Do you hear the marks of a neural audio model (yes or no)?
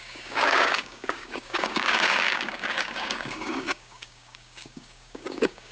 yes